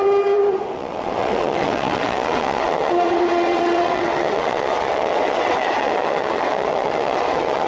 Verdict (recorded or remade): remade